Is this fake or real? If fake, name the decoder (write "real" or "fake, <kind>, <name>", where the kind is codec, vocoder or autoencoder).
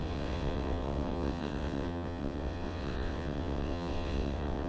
fake, vocoder, WaveNeXt